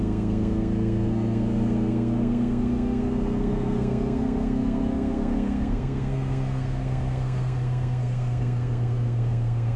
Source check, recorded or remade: remade